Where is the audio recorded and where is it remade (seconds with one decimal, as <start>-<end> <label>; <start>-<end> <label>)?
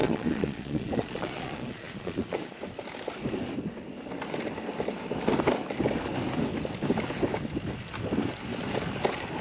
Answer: 0.0-2.6 remade; 2.6-9.4 recorded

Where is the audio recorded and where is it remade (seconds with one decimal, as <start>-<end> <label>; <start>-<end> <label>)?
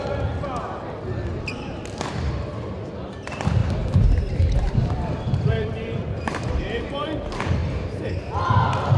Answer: 0.0-3.6 recorded; 3.6-6.6 remade; 6.6-7.6 recorded; 7.6-8.3 remade; 8.3-9.0 recorded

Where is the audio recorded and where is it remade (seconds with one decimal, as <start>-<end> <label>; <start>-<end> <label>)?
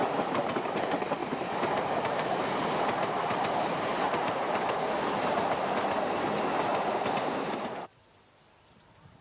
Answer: 0.0-1.2 recorded; 1.2-5.6 remade; 5.6-6.7 recorded; 6.7-7.8 remade; 7.8-9.2 recorded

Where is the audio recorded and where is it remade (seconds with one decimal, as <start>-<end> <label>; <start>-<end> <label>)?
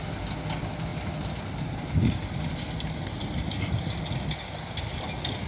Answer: 0.0-5.5 recorded